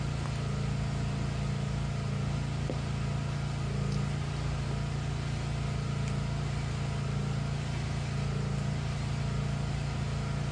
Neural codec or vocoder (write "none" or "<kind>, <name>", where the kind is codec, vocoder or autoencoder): none